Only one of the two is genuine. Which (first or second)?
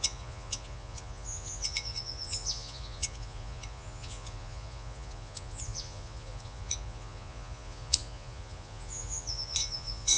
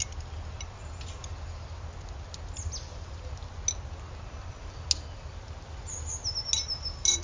second